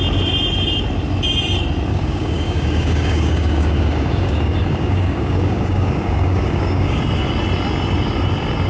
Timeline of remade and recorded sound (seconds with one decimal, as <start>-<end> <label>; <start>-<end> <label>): 0.0-1.9 recorded; 1.9-7.0 remade; 7.0-8.7 recorded